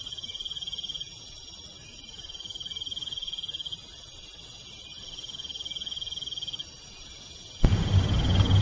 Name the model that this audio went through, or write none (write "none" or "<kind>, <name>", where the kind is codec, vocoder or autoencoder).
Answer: none